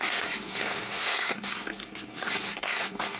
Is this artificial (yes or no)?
yes